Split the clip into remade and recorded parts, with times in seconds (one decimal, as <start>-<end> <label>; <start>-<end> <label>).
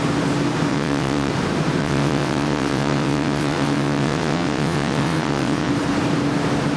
0.0-0.7 recorded; 0.7-1.3 remade; 1.3-1.8 recorded; 1.8-5.7 remade; 5.7-6.8 recorded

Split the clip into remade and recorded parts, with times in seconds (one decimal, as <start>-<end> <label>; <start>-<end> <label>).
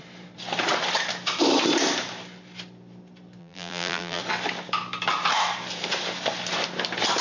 0.0-3.4 recorded; 3.4-4.2 remade; 4.2-7.2 recorded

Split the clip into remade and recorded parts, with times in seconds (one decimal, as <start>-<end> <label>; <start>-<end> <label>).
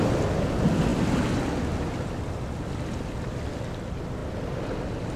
0.0-5.2 recorded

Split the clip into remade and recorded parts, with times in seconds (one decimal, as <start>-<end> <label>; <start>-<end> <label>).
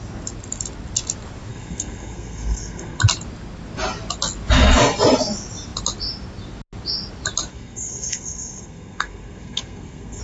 0.0-1.5 recorded; 1.5-3.0 remade; 3.0-7.5 recorded; 7.5-10.2 remade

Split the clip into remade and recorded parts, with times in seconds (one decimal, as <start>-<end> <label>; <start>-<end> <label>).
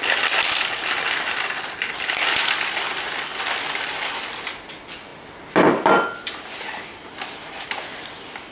0.0-8.5 recorded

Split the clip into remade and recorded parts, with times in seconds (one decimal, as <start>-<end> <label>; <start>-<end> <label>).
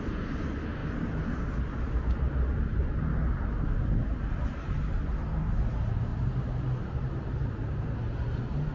0.0-0.8 recorded; 0.8-1.4 remade; 1.4-2.7 recorded; 2.7-3.2 remade; 3.2-8.7 recorded